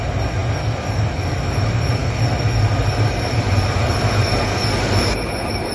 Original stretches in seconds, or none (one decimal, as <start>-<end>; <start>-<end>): none